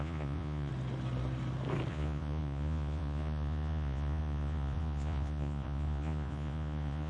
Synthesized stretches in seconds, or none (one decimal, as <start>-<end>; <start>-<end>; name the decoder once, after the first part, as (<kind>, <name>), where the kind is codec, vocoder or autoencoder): 0.0-0.7 (vocoder, Vocos); 1.9-7.1